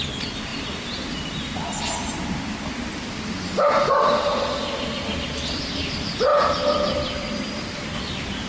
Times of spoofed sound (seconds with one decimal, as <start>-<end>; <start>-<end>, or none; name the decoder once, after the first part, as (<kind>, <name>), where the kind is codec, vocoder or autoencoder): none